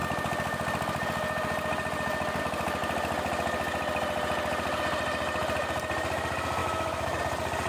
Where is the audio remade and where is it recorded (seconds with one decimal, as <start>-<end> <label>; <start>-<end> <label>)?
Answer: 0.0-6.6 recorded; 6.6-7.2 remade; 7.2-7.7 recorded